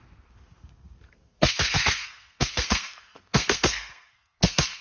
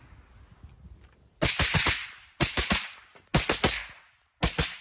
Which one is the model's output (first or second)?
first